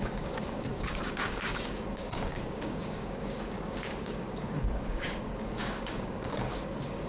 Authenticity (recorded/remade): remade